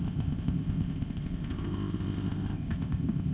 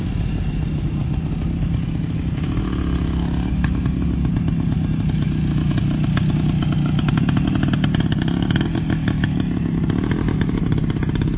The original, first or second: second